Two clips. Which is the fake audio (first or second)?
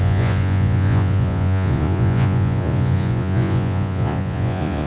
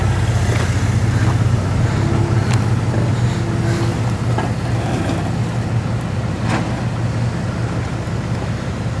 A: first